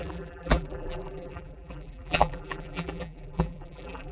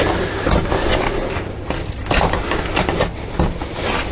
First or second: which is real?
second